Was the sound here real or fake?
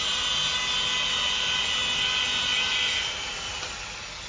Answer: real